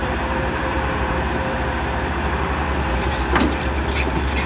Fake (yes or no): yes